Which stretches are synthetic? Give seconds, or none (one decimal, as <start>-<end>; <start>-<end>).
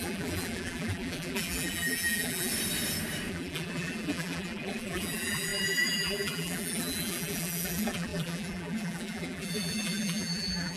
0.0-2.5; 3.3-10.8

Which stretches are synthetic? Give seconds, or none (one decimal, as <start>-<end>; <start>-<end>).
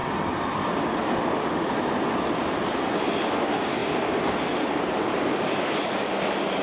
0.0-3.3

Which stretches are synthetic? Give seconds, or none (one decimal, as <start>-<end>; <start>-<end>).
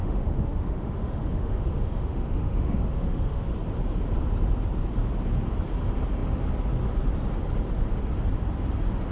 0.0-3.5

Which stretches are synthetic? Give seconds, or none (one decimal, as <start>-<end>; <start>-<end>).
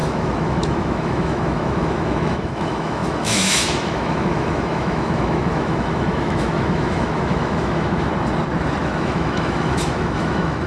0.0-8.1; 8.8-10.7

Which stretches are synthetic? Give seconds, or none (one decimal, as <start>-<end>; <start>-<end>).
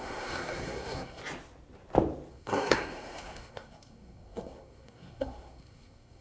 0.0-1.2; 2.3-6.2